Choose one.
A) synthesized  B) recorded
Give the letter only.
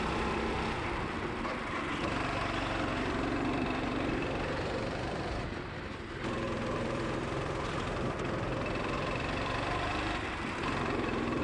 A